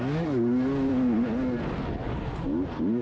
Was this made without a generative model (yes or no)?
yes